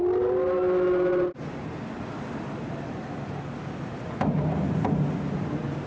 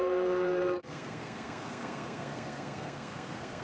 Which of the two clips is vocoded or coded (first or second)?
second